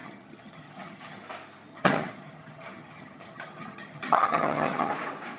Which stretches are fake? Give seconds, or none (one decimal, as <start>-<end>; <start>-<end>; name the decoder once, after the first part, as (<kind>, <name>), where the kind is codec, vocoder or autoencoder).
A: 0.0-1.2 (vocoder, HiFi-GAN); 1.7-4.9